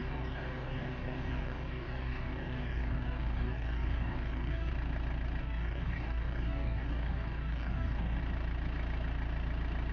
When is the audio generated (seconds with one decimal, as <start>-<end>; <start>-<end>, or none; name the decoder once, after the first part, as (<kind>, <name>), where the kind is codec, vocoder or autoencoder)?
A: 0.0-4.7 (codec, DAC); 5.4-8.2